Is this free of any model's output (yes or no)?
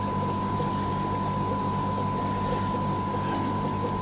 yes